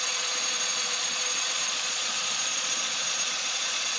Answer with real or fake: fake